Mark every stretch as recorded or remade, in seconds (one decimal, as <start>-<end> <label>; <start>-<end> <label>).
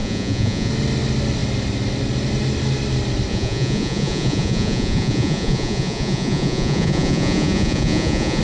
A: 0.0-0.7 remade; 0.7-3.3 recorded; 3.3-8.4 remade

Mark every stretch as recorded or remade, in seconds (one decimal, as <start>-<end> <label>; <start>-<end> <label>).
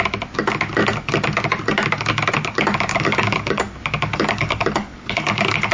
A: 0.0-2.9 recorded; 2.9-3.6 remade; 3.6-4.1 recorded; 4.1-5.7 remade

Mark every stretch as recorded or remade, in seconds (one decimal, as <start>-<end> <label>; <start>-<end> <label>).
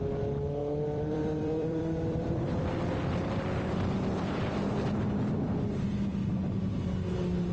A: 0.0-0.6 recorded; 0.6-2.9 remade; 2.9-6.1 recorded; 6.1-6.7 remade; 6.7-7.5 recorded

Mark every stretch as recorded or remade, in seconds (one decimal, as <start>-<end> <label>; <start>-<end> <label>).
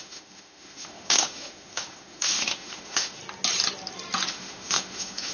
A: 0.0-3.2 remade; 3.2-4.3 recorded; 4.3-5.3 remade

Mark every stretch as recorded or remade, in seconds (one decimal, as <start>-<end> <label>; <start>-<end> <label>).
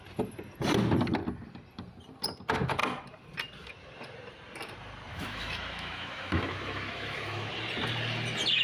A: 0.0-5.1 recorded; 5.1-7.5 remade; 7.5-8.6 recorded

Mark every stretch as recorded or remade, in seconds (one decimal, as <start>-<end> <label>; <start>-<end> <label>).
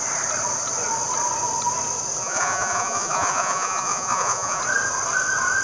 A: 0.0-2.2 recorded; 2.2-4.6 remade; 4.6-5.6 recorded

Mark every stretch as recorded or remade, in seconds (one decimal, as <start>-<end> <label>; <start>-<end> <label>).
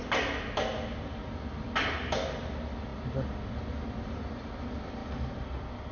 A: 0.0-5.9 recorded